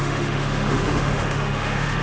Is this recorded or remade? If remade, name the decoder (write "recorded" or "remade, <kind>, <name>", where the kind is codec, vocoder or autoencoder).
remade, autoencoder, DAC-VAE